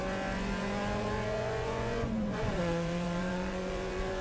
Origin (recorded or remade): remade